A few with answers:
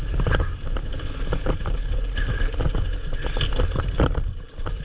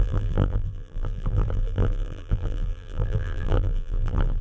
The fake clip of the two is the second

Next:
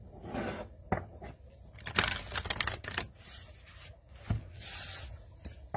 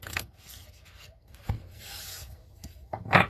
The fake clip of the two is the second